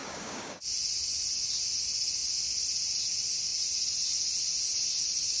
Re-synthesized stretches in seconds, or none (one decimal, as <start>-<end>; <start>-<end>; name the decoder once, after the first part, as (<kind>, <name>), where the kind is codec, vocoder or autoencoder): 0.0-0.6 (codec, DAC)